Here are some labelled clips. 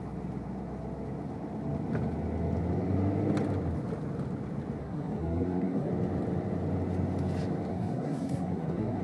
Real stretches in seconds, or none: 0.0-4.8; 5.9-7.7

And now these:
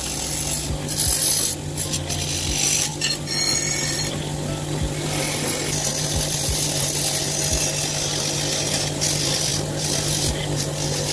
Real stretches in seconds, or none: 0.0-11.1

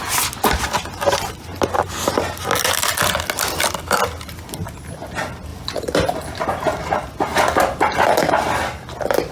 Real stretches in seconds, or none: 0.0-9.3

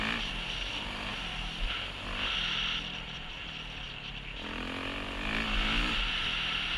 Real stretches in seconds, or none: 0.0-6.8